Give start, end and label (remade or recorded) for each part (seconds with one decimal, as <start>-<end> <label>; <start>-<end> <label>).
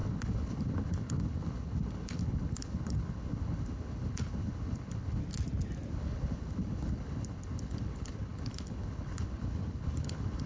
0.0-5.2 remade; 5.2-5.9 recorded; 5.9-10.5 remade